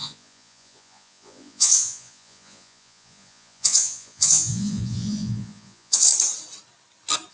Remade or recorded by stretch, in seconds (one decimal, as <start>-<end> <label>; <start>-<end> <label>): 0.0-6.1 remade; 6.1-7.3 recorded